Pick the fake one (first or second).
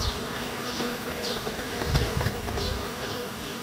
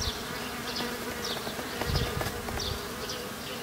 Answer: first